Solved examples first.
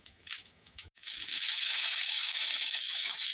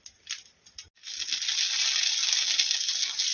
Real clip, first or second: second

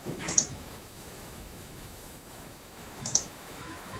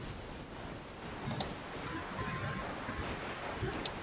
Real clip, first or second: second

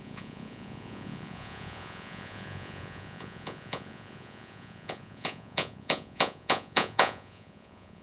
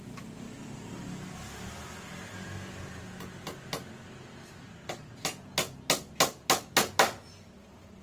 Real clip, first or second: second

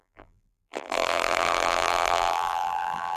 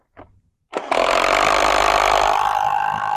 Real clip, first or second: second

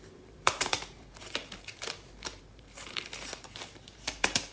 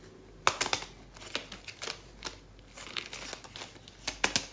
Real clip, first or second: second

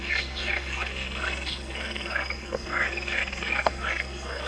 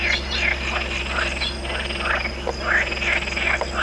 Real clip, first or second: second